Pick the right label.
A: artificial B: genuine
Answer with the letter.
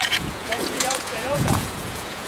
A